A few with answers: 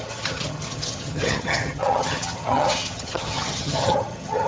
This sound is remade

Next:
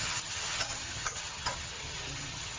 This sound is remade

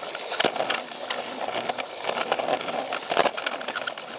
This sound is recorded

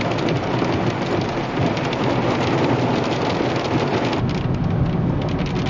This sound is recorded